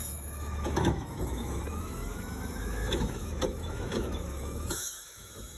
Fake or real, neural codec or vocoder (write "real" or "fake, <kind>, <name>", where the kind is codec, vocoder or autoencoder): fake, autoencoder, DAC-VAE